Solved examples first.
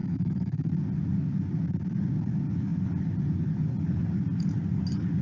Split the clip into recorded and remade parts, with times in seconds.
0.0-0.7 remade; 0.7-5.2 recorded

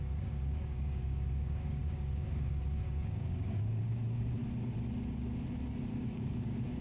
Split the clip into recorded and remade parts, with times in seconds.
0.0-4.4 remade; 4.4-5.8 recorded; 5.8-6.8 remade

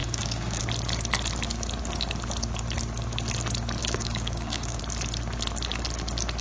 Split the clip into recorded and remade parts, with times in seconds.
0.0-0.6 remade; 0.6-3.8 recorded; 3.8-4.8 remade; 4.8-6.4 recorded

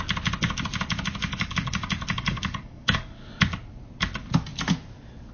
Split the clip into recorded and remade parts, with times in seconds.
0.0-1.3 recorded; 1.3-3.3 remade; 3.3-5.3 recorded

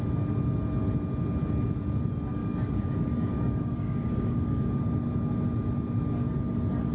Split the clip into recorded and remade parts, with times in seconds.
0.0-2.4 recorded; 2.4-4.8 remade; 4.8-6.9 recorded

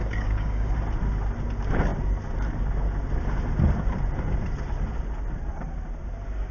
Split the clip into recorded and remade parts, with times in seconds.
0.0-0.7 remade; 0.7-6.5 recorded